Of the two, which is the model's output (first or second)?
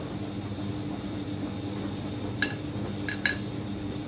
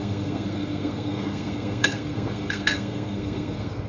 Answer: second